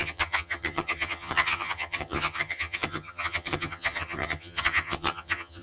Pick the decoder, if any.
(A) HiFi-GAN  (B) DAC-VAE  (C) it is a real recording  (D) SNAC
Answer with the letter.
A